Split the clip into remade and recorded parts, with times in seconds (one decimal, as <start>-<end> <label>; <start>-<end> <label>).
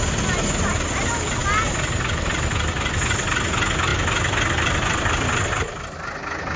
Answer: 0.0-6.6 recorded